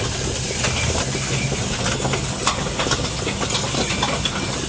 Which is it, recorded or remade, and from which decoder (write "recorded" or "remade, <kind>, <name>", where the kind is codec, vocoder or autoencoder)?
recorded